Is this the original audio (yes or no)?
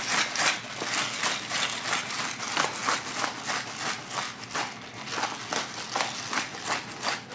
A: yes